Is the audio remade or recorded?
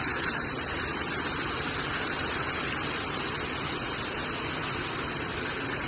remade